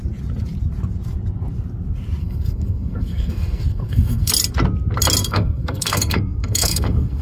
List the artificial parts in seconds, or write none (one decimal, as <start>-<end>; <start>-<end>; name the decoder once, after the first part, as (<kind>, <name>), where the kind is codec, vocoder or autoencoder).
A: 2.2-4.3 (codec, SNAC); 5.2-7.2